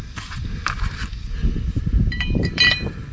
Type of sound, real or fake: fake